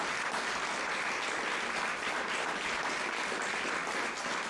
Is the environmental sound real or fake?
real